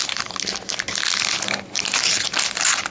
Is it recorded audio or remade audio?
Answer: recorded